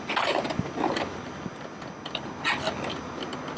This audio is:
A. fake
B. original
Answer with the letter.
B